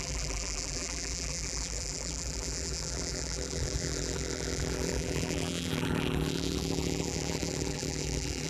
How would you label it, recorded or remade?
remade